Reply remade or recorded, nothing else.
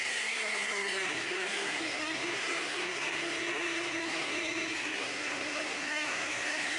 remade